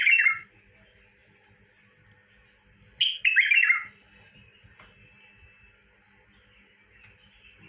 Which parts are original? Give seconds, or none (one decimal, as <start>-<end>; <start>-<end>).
0.0-7.7

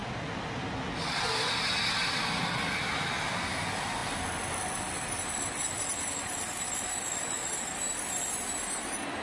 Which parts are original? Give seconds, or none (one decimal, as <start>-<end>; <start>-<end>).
0.0-9.2

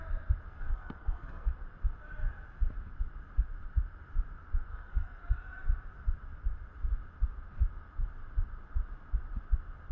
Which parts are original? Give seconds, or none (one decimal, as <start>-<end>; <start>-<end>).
0.0-0.5; 1.5-4.7; 5.2-9.9